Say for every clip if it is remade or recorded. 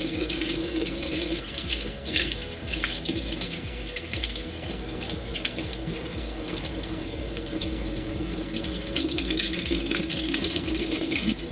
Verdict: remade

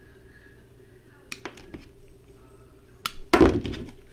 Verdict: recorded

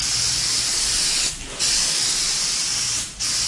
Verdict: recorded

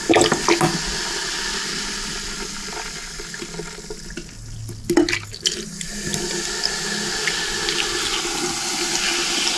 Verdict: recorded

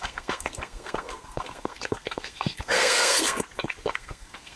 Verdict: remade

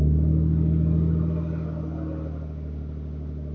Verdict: recorded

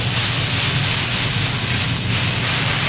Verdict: recorded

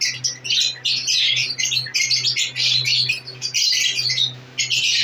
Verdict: recorded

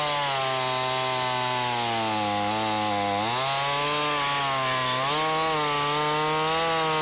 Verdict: recorded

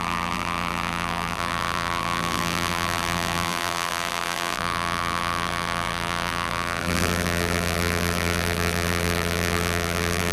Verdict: remade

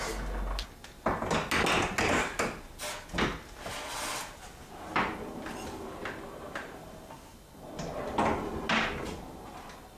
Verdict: recorded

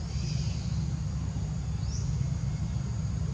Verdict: recorded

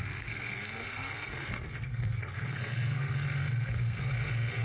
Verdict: remade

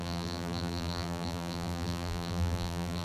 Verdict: remade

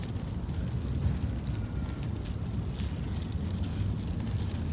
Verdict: recorded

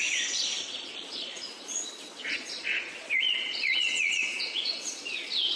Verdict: remade